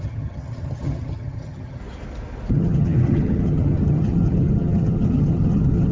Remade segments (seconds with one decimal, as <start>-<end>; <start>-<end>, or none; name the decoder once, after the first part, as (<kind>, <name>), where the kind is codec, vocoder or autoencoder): 0.0-1.8 (vocoder, HiFi-GAN); 2.5-5.9